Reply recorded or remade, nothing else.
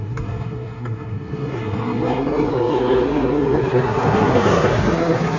remade